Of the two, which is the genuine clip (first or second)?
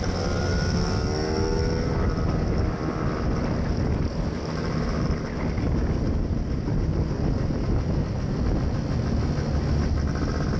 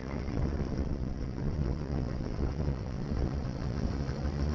first